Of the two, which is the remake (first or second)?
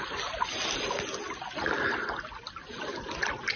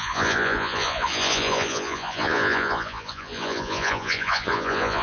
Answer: second